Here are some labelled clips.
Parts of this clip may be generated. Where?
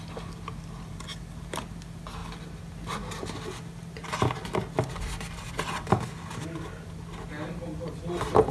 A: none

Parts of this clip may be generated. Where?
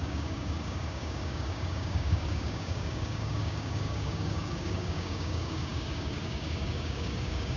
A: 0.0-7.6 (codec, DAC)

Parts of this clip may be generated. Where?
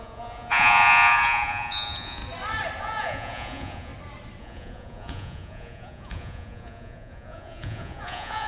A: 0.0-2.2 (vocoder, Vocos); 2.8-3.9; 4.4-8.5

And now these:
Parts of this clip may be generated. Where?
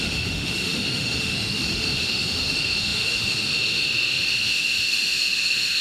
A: 0.0-5.8 (autoencoder, DAC-VAE)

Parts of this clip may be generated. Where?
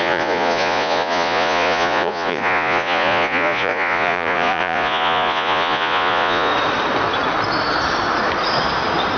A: 0.0-6.5 (vocoder, Vocos)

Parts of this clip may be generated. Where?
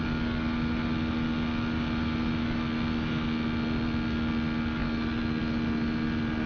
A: none